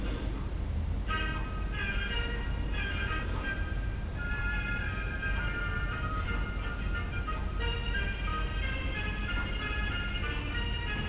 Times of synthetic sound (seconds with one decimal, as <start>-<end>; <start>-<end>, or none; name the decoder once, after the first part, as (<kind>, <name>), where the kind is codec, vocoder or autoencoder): none